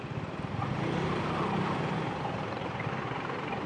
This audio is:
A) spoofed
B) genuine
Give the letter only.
A